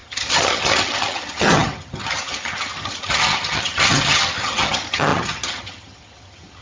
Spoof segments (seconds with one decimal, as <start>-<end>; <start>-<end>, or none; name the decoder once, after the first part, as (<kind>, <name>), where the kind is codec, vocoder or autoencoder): 0.0-6.6 (vocoder, HiFi-GAN)